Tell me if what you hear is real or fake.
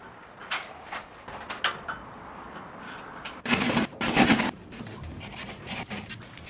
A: real